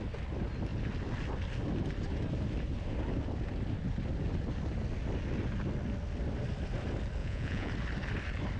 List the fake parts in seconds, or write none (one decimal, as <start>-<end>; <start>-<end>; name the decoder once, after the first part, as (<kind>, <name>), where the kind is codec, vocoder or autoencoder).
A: 7.2-7.7 (vocoder, Vocos)

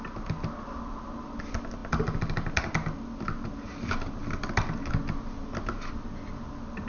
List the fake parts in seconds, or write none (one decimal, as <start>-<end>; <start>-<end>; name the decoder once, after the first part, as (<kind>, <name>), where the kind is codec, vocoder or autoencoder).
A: none

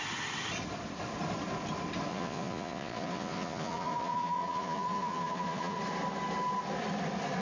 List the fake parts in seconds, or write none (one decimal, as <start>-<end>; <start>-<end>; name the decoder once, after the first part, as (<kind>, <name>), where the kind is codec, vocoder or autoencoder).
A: 2.1-5.8 (vocoder, Vocos)